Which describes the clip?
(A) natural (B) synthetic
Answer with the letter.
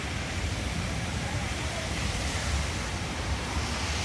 B